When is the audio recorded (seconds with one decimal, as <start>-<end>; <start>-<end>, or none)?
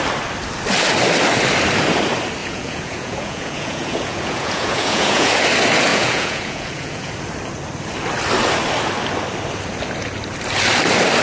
0.0-2.4; 5.3-5.9; 7.1-11.2